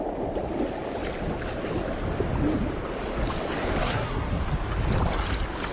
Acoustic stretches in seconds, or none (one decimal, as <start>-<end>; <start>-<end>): 0.0-3.8; 4.4-5.7